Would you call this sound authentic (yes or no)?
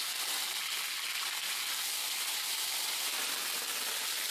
yes